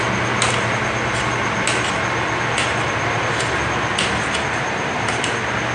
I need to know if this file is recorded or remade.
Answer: recorded